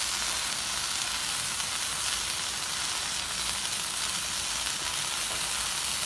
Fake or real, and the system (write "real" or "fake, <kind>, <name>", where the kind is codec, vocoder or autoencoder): real